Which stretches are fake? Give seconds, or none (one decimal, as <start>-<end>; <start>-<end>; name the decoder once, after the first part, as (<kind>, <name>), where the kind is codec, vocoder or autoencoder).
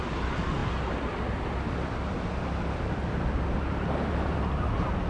none